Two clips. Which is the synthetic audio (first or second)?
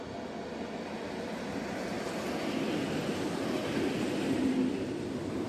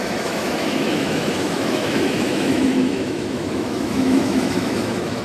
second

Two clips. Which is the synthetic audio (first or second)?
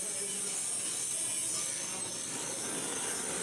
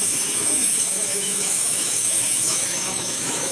second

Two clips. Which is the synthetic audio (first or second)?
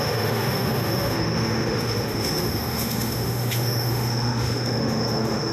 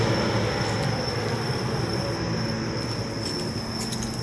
first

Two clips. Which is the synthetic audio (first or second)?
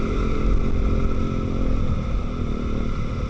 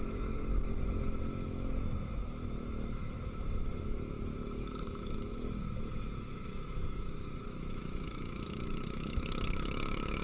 second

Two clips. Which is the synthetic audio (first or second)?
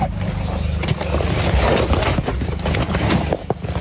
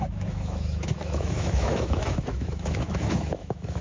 second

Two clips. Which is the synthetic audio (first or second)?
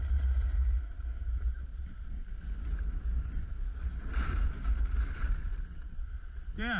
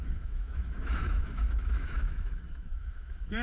second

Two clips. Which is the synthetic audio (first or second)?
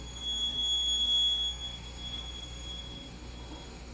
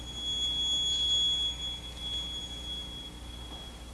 first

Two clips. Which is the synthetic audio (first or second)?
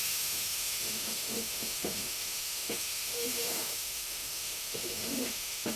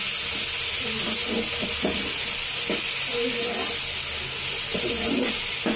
first